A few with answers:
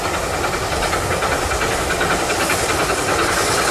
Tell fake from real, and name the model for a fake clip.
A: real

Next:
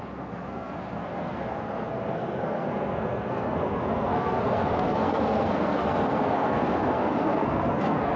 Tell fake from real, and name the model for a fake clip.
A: fake, codec, SNAC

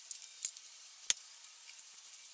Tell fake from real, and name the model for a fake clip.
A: real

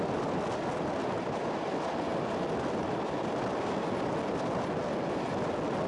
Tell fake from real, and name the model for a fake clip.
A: real